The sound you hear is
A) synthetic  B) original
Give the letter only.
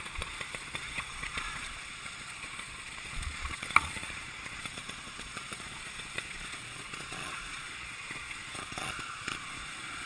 A